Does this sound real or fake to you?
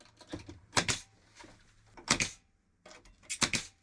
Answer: real